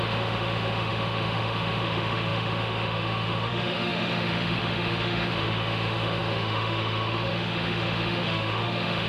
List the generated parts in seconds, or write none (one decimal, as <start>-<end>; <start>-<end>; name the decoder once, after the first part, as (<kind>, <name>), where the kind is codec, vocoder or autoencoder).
0.0-9.1 (autoencoder, DAC-VAE)